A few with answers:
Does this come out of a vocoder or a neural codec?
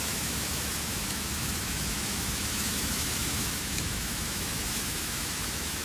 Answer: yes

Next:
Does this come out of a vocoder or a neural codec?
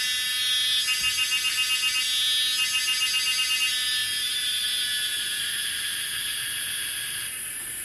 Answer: no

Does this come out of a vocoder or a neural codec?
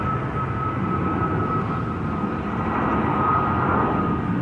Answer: no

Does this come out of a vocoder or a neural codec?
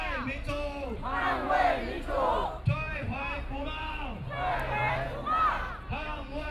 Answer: yes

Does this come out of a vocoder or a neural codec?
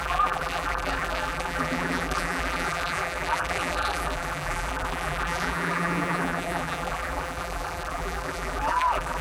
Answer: yes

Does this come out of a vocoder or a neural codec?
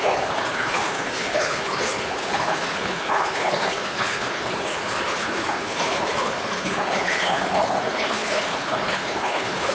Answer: yes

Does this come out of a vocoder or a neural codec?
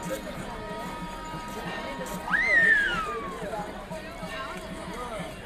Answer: yes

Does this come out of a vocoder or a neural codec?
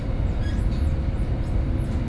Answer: no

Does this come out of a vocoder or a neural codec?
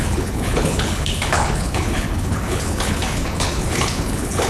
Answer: yes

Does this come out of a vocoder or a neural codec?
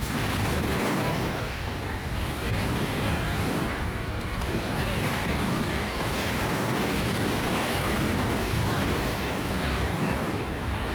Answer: yes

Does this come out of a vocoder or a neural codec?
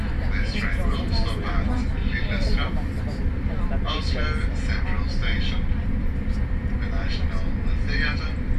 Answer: yes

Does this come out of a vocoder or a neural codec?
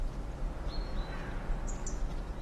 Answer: no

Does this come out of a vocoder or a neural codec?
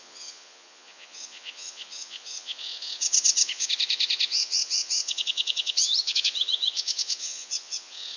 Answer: yes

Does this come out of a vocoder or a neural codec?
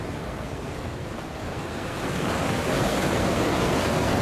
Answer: yes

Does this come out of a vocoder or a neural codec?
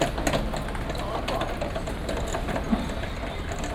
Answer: no